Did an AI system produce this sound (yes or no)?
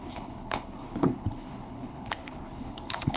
yes